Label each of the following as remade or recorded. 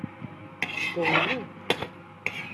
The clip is recorded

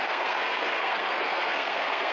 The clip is remade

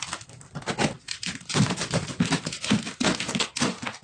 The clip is recorded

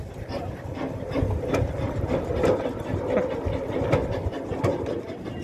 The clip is recorded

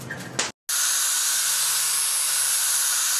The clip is recorded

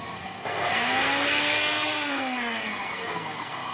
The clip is remade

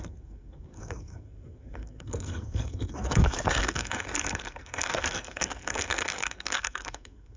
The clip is remade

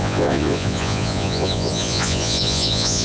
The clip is remade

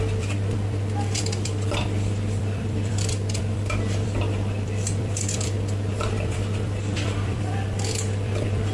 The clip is remade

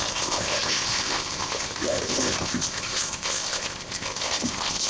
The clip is remade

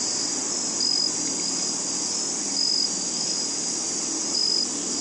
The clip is recorded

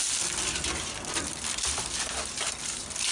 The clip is recorded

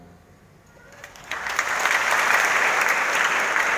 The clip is recorded